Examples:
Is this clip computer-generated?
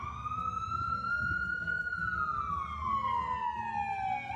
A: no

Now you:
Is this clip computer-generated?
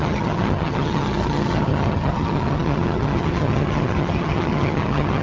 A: yes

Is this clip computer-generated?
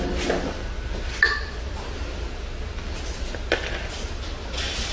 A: no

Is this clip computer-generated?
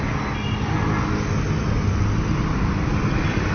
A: no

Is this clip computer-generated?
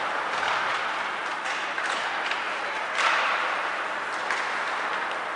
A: yes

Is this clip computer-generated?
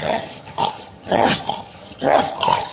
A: yes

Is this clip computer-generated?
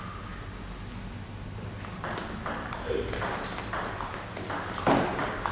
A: no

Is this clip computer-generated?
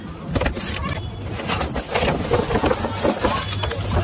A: no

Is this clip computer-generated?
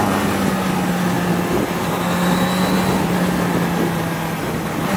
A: no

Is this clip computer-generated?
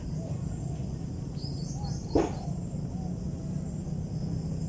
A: no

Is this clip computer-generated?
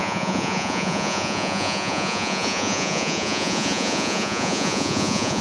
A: yes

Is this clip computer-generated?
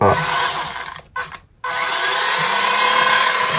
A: no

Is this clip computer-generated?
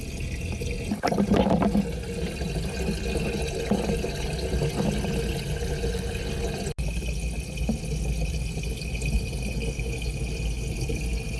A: no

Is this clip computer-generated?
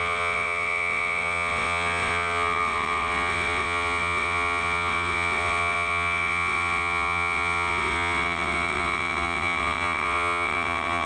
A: yes